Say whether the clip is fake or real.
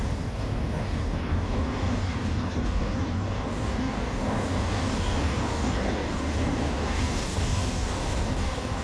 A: fake